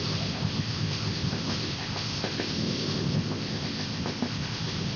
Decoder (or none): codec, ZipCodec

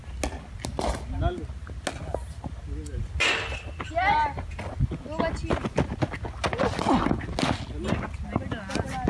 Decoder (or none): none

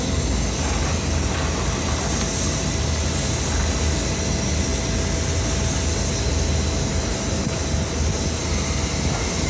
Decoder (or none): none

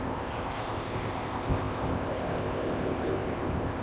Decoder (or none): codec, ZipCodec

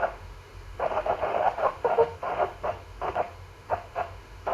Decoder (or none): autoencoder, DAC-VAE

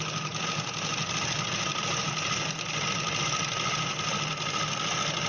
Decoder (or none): none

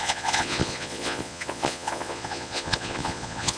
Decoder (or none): vocoder, Vocos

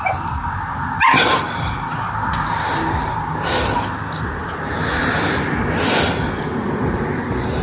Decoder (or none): none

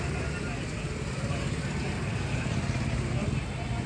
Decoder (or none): none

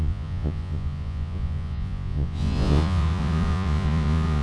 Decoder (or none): vocoder, Vocos